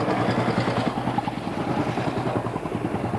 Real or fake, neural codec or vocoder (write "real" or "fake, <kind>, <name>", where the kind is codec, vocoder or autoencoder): real